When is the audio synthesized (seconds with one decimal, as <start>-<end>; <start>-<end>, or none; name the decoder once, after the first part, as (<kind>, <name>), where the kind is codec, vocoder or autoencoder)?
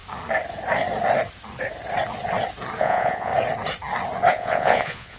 2.8-3.3 (vocoder, Vocos); 4.3-5.2